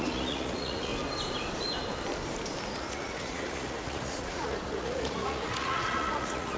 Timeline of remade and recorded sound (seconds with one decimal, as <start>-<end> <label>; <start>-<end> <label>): 0.0-0.9 remade; 0.9-2.8 recorded; 2.8-6.6 remade